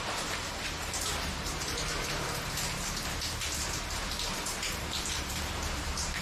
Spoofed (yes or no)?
yes